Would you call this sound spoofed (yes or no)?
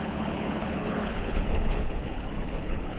yes